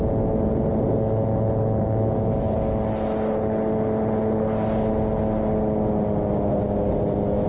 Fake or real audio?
real